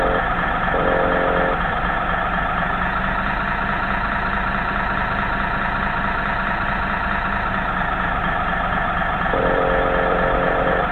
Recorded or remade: recorded